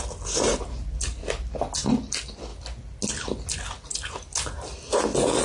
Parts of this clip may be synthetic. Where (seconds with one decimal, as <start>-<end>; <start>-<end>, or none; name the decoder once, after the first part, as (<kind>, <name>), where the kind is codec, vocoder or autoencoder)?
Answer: none